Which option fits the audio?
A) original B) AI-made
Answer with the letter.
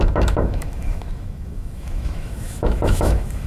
B